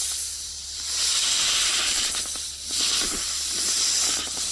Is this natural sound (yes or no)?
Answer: no